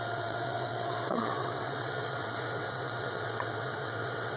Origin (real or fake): fake